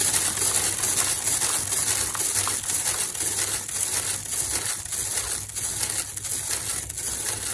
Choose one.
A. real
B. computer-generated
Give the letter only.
A